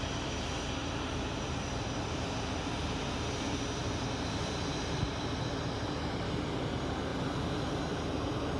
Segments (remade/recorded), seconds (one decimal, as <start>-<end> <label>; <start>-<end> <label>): 0.0-0.8 recorded; 0.8-2.3 remade; 2.3-3.8 recorded; 3.8-5.4 remade; 5.4-8.6 recorded